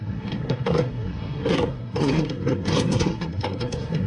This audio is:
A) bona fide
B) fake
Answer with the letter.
B